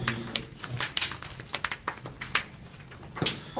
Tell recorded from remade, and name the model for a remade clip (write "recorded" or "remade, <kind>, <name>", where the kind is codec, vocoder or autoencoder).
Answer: recorded